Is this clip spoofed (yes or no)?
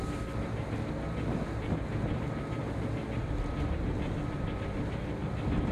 no